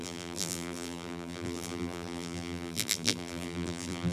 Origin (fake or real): fake